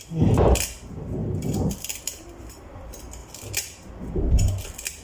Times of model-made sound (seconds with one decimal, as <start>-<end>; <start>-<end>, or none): 1.2-2.0

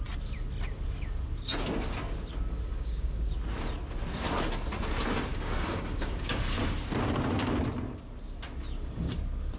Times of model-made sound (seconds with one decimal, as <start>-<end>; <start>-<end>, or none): 2.7-3.3; 5.3-6.4

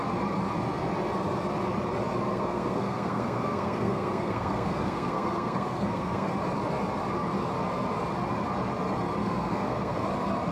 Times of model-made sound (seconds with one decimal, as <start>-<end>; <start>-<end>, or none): 2.3-6.3; 9.2-10.1

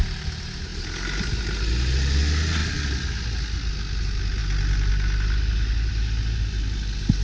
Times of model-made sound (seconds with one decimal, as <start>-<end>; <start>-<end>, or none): none

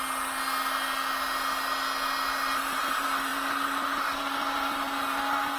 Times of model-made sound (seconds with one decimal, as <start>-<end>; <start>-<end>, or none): none

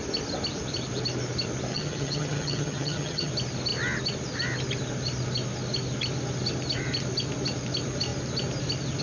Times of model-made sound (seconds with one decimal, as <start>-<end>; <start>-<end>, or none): 1.7-3.3